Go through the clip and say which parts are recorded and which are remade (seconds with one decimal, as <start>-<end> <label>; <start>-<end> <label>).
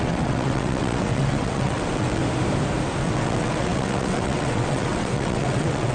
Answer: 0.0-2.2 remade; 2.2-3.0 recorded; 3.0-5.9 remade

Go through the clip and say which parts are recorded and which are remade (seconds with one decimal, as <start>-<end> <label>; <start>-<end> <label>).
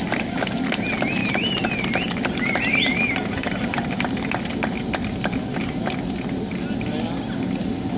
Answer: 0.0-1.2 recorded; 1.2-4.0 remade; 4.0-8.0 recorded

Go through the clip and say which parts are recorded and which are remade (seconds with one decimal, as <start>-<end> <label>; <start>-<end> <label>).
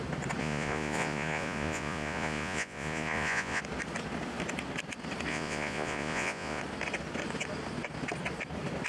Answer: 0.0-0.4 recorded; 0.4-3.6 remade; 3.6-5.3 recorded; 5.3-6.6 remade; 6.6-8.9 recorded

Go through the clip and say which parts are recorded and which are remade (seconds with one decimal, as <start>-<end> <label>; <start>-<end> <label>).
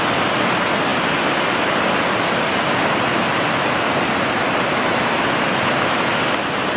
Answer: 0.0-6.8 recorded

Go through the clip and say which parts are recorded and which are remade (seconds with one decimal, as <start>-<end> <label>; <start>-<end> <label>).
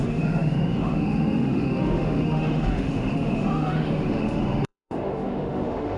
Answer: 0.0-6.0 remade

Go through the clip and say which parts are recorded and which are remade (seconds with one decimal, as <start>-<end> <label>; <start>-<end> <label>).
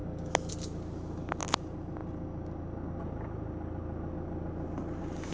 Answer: 0.0-5.3 recorded